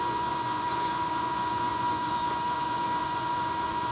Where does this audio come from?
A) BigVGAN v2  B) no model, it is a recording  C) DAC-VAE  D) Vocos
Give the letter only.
D